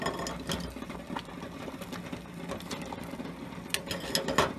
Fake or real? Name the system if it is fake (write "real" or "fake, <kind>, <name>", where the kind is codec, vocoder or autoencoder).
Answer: real